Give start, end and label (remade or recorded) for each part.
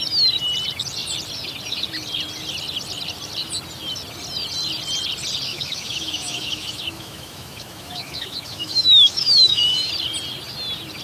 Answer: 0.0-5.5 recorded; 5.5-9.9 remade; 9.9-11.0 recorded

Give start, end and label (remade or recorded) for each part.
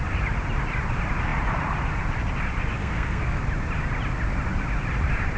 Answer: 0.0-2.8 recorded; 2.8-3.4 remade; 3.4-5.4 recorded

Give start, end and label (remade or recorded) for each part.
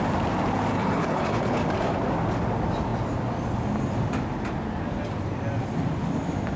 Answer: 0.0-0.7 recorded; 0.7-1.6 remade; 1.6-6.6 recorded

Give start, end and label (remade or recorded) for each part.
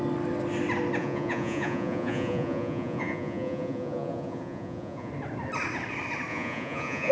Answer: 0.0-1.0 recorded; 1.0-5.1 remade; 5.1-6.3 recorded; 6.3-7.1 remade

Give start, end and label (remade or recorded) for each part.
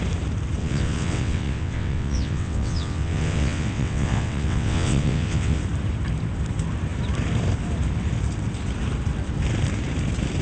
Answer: 0.0-0.6 recorded; 0.6-5.6 remade; 5.6-10.4 recorded